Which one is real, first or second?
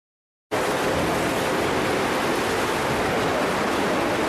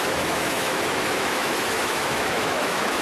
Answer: first